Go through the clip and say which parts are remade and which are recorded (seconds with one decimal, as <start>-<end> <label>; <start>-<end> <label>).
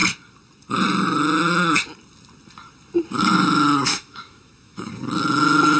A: 0.0-3.9 recorded; 3.9-4.9 remade; 4.9-5.8 recorded